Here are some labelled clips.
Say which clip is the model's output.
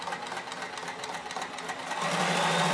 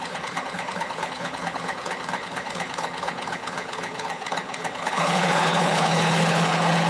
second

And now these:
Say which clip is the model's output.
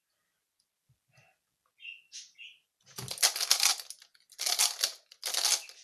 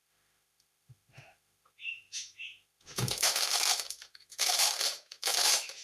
second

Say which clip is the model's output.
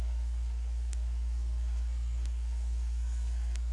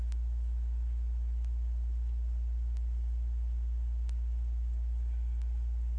first